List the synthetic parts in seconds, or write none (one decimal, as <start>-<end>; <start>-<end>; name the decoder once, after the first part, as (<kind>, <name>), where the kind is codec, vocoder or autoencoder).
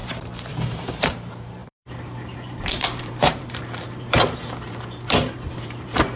0.0-6.2 (vocoder, BigVGAN v2)